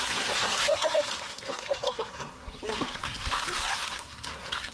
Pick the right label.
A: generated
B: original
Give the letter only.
A